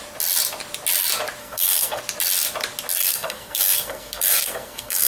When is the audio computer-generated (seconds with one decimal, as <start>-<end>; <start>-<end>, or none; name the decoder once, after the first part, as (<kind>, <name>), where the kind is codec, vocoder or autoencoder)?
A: 1.4-2.0 (codec, SNAC); 3.0-5.1